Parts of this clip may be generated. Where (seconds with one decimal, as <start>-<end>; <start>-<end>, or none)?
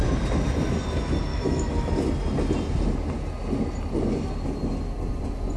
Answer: 1.3-1.9